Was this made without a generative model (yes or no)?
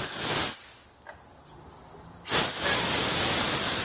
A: yes